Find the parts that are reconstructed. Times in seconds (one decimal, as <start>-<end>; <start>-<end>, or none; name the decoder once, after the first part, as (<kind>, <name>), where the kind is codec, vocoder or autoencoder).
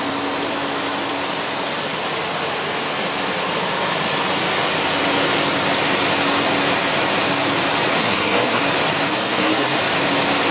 8.0-8.6 (codec, SNAC); 9.1-9.8